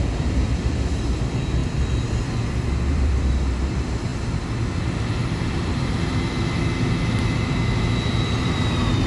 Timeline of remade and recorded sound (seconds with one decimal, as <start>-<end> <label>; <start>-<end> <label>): 0.0-1.6 remade; 1.6-2.9 recorded; 2.9-4.1 remade; 4.1-4.7 recorded; 4.7-5.2 remade; 5.2-8.4 recorded; 8.4-9.1 remade